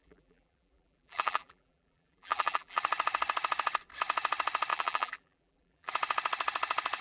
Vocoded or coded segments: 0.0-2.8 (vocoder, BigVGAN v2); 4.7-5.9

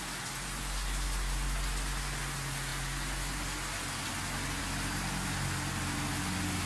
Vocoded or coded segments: none

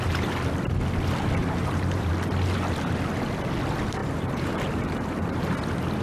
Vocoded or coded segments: 1.4-2.1 (vocoder, BigVGAN v2); 4.0-5.4

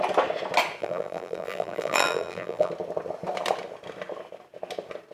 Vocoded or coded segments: 0.8-2.7 (vocoder, BigVGAN v2)

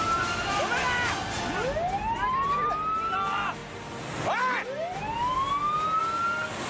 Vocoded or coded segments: none